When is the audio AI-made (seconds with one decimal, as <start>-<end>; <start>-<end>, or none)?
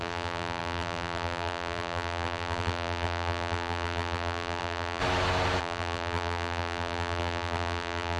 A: 0.0-5.0; 5.6-8.2